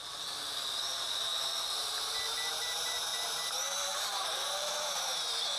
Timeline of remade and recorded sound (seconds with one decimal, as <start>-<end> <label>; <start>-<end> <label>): 0.0-0.7 recorded; 0.7-1.3 remade; 1.3-2.3 recorded; 2.3-5.6 remade